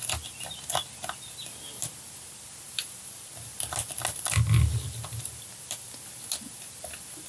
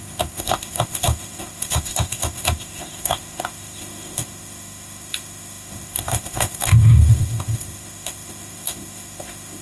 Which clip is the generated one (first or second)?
second